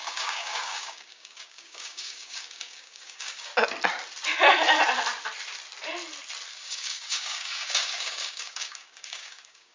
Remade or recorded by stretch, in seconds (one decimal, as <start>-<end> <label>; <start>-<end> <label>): 0.0-3.5 remade; 3.5-6.5 recorded; 6.5-9.7 remade